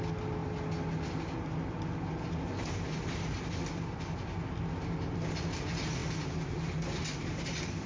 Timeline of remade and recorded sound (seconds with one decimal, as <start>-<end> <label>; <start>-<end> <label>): 0.0-7.9 recorded